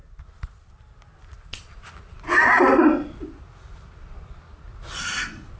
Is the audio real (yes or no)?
yes